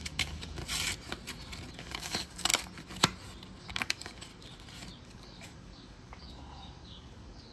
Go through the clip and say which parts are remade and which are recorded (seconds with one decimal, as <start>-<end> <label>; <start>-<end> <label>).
0.0-0.6 remade; 0.6-1.7 recorded; 1.7-2.5 remade; 2.5-3.6 recorded; 3.6-4.3 remade; 4.3-5.0 recorded; 5.0-7.5 remade